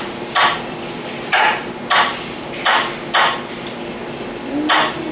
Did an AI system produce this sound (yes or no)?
no